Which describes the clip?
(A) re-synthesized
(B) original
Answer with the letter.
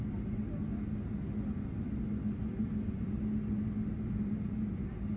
B